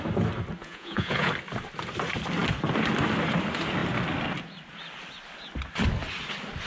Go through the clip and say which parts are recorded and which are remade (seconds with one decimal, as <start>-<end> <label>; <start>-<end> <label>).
0.0-0.6 recorded; 0.6-1.3 remade; 1.3-6.7 recorded